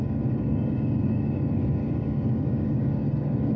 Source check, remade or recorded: remade